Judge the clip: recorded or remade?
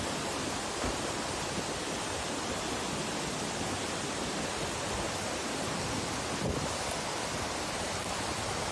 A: recorded